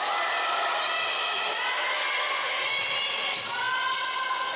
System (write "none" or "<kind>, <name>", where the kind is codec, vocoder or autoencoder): none